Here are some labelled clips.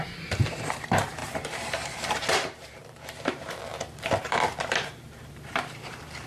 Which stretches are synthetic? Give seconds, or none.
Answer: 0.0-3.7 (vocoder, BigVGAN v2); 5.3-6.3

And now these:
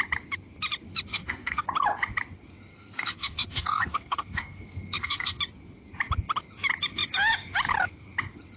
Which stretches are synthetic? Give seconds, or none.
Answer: 1.1-1.6 (codec, SNAC); 2.7-5.4

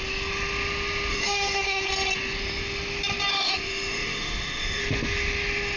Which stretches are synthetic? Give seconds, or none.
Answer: 1.1-1.9 (autoencoder, DAC-VAE); 3.3-4.8